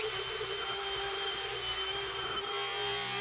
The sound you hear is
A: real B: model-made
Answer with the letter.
A